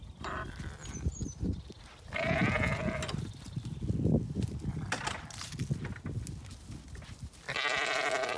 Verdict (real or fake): real